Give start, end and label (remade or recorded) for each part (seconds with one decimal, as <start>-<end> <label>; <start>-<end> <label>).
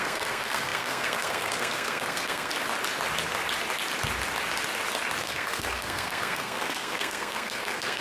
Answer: 0.0-2.5 remade; 2.5-5.2 recorded; 5.2-8.0 remade